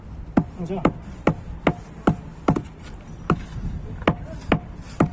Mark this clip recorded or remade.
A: recorded